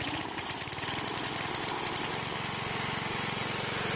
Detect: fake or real real